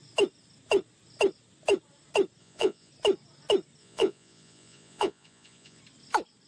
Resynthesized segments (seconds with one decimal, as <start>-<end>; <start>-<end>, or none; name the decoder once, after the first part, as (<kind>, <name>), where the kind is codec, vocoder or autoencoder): 2.4-2.9 (vocoder, Vocos); 3.8-5.8